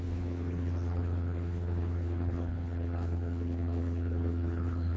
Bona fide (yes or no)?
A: no